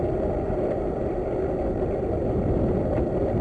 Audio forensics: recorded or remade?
recorded